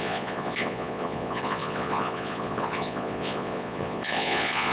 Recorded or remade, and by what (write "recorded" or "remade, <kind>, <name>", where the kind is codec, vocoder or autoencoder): remade, vocoder, Vocos